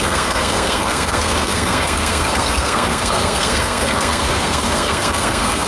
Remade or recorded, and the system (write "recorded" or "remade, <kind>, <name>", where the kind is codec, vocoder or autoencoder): remade, codec, SNAC